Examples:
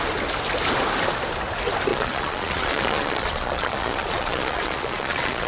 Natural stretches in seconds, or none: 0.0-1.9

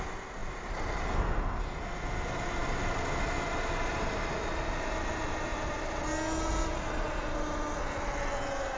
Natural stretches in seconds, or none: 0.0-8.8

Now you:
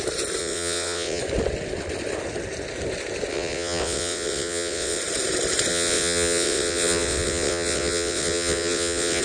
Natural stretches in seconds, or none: 0.0-0.4; 1.2-3.3; 5.0-5.7